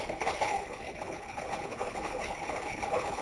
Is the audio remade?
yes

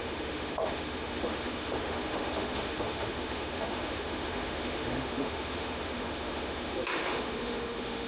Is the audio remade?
yes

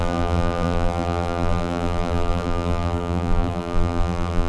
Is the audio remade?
yes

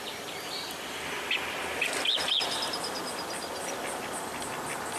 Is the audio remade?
no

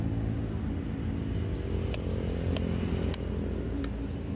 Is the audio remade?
no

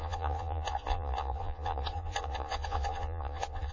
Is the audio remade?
yes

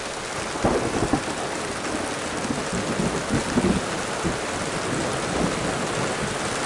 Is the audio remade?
no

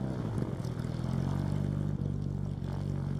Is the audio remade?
no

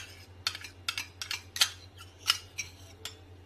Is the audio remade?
no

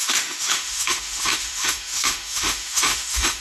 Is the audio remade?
yes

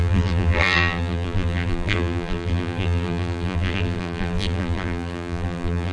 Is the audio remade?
yes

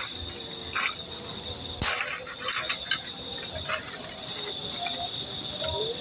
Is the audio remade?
no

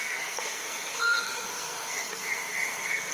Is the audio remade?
yes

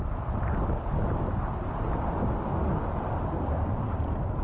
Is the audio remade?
no